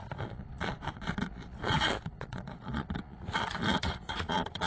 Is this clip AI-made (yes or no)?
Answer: yes